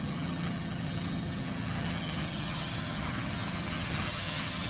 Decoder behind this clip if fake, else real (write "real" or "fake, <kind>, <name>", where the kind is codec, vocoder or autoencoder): fake, vocoder, HiFi-GAN